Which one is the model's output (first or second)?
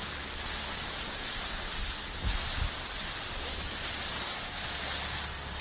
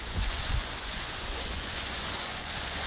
second